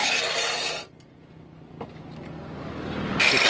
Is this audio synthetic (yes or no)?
no